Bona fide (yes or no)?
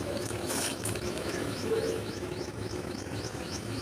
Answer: no